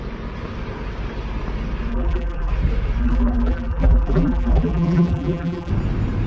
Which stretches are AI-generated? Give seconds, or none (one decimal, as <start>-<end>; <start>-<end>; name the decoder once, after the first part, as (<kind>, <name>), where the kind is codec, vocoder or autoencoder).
1.9-2.5 (vocoder, BigVGAN v2); 3.0-5.7